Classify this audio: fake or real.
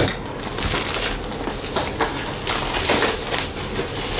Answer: real